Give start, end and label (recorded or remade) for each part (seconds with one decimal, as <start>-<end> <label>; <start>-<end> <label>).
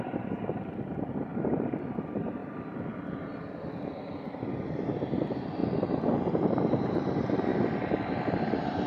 0.0-2.4 remade; 2.4-4.9 recorded; 4.9-7.5 remade; 7.5-8.1 recorded; 8.1-8.9 remade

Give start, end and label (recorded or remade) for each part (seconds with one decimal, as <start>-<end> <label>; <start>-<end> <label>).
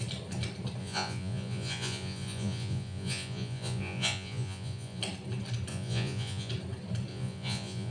0.0-0.8 recorded; 0.8-5.0 remade; 5.0-5.7 recorded; 5.7-6.5 remade; 6.5-7.1 recorded; 7.1-7.9 remade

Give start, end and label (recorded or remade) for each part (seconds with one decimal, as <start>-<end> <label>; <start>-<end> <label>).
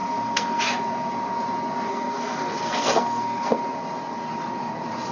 0.0-0.6 remade; 0.6-1.9 recorded; 1.9-3.6 remade; 3.6-5.1 recorded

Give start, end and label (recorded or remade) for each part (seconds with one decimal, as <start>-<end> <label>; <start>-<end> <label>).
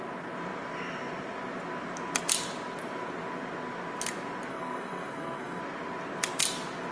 0.0-4.5 recorded; 4.5-5.6 remade; 5.6-6.9 recorded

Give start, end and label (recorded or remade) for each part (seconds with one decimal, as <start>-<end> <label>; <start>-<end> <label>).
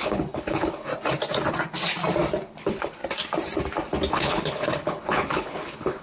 0.0-0.9 remade; 0.9-2.6 recorded; 2.6-3.0 remade; 3.0-4.1 recorded; 4.1-6.0 remade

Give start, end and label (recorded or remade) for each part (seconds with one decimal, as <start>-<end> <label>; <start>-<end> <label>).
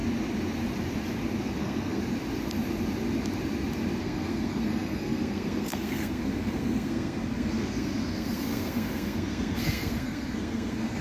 0.0-1.6 recorded; 1.6-2.0 remade; 2.0-4.0 recorded; 4.0-11.0 remade